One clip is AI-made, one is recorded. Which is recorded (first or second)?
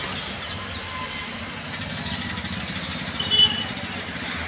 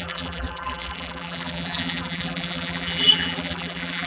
first